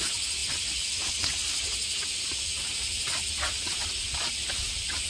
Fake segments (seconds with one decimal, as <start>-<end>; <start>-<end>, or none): none